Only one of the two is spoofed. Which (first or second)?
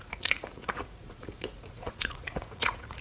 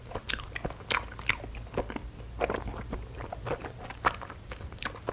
first